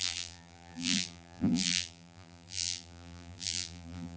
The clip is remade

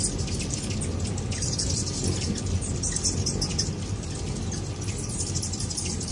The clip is recorded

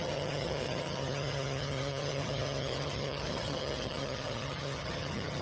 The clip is remade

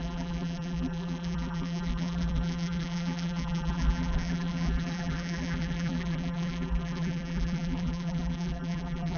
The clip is remade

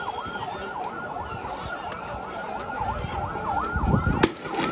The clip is recorded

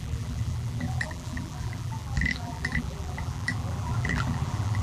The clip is remade